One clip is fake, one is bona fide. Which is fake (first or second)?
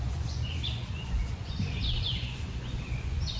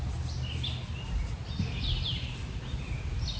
first